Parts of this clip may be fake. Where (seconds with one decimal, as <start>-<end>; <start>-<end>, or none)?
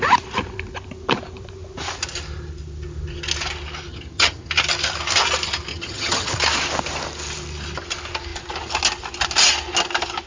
3.9-4.5; 5.7-6.3